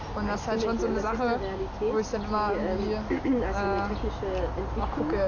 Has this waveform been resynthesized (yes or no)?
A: no